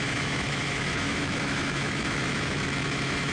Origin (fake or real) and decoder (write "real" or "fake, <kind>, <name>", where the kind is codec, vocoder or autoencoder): fake, autoencoder, DAC-VAE